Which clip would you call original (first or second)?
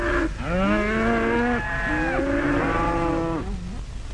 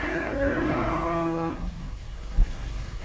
first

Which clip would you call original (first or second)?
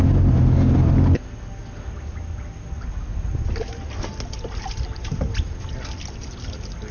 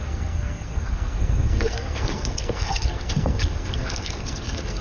first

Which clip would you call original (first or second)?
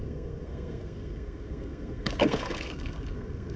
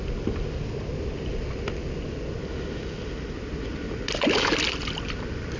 second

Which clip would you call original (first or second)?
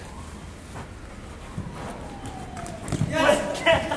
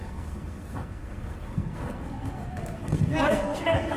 first